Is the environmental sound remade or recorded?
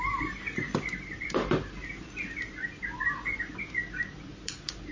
recorded